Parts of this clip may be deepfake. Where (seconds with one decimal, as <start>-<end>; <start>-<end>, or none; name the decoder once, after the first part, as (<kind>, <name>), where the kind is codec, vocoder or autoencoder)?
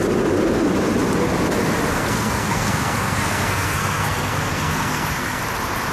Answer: 1.9-5.4 (codec, SNAC)